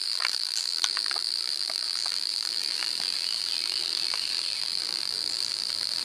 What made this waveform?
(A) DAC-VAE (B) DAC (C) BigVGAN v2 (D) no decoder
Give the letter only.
C